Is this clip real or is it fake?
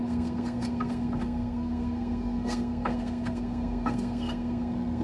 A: fake